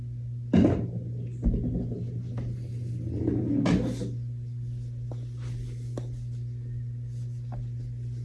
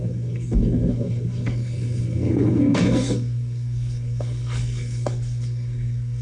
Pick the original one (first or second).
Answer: first